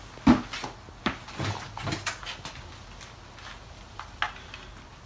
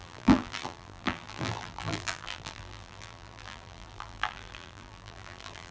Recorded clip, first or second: first